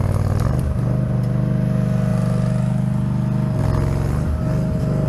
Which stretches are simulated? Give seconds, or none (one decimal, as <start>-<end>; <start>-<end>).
none